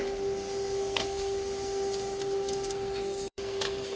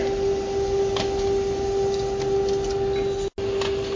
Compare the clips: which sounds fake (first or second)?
first